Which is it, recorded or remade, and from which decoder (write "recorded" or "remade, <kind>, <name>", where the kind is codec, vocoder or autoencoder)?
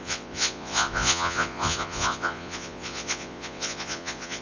remade, vocoder, Vocos